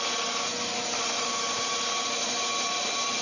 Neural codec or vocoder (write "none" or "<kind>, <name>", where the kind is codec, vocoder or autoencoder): none